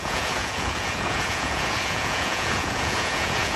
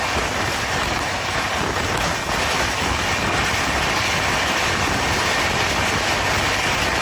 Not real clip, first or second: first